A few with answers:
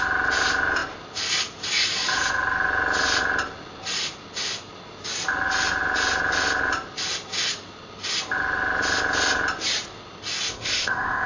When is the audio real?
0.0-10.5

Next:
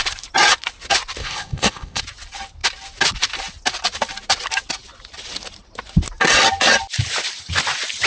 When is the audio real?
0.0-1.2; 2.0-8.1

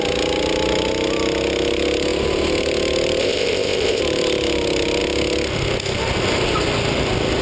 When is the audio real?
0.0-3.2; 4.0-7.4

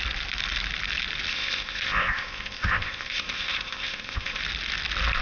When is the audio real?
0.0-1.3; 4.4-5.2

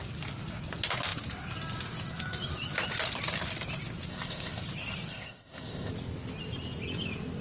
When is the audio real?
0.0-4.1; 4.6-5.1; 5.9-7.4

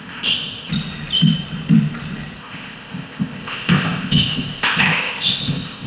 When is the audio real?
0.7-2.4

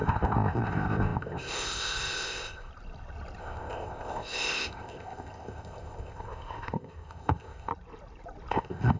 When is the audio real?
2.7-3.4; 7.7-8.5

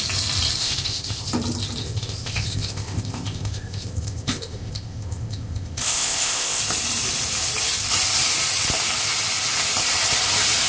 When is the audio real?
0.0-0.6; 1.3-1.8; 6.6-10.7